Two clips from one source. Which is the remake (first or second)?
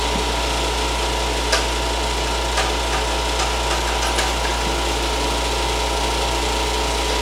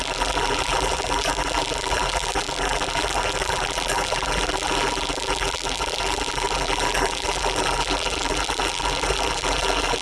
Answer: second